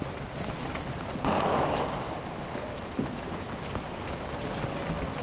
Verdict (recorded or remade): remade